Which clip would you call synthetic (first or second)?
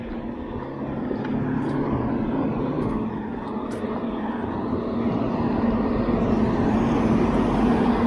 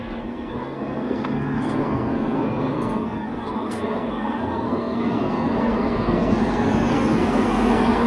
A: second